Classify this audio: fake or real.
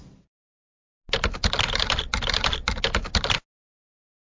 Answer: real